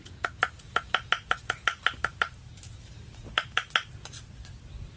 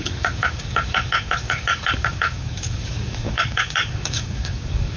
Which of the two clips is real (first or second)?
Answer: first